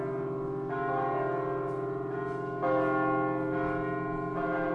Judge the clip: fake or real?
real